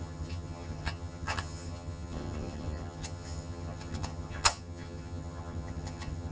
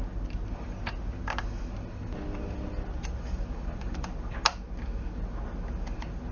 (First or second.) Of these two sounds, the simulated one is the first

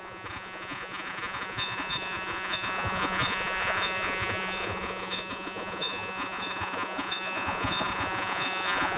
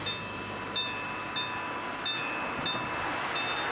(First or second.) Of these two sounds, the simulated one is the first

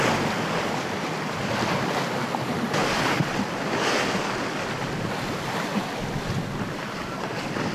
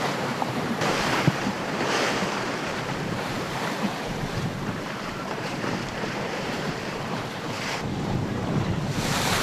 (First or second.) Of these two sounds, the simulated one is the second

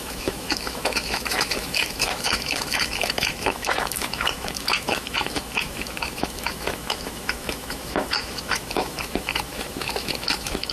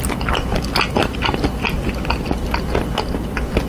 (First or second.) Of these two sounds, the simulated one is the first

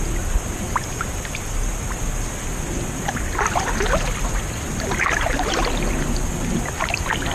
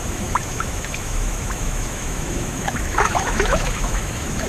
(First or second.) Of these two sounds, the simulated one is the second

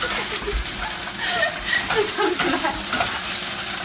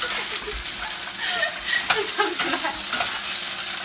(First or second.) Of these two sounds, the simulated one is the first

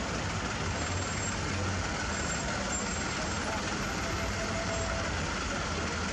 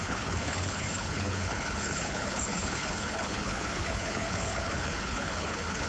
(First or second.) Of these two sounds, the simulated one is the second